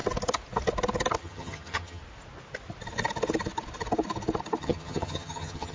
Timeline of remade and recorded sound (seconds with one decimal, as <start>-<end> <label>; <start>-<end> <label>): 0.0-1.2 recorded; 1.2-2.0 remade; 2.0-4.6 recorded; 4.6-5.7 remade